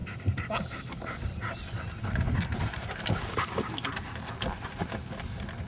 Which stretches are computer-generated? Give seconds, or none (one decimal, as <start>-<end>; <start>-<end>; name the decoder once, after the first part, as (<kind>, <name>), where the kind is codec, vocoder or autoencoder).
none